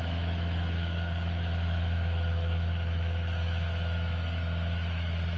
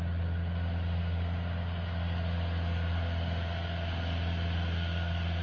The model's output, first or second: first